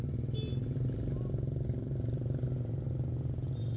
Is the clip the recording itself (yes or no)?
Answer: yes